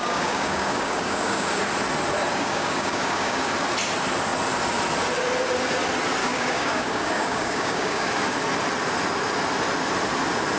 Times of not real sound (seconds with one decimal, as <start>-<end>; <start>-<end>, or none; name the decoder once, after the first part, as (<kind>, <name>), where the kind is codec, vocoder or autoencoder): 0.0-1.6 (codec, DAC); 2.3-3.5; 6.2-8.1